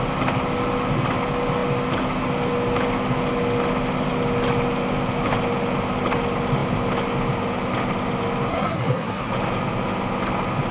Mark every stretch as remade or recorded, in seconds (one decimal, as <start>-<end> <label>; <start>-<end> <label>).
0.0-8.5 recorded; 8.5-9.3 remade; 9.3-10.7 recorded